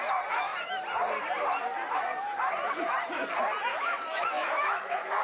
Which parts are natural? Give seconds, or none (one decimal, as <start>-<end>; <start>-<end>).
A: 0.0-3.7